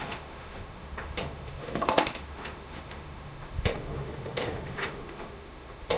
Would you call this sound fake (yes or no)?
yes